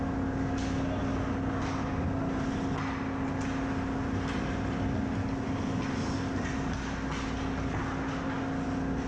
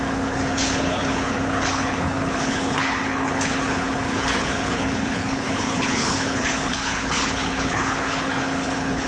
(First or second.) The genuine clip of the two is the first